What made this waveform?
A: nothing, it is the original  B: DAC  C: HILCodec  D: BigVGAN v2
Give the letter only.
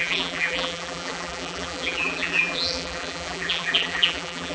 D